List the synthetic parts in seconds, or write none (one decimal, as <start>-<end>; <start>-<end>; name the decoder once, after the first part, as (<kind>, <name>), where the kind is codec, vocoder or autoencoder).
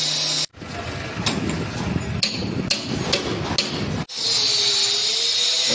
none